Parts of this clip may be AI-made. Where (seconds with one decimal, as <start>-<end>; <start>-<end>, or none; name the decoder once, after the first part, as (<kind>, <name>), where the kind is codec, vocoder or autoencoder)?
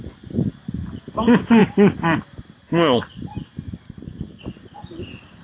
none